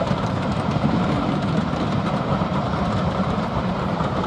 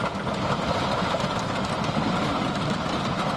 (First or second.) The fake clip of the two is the first